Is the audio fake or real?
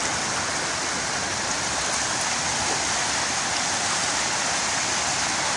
real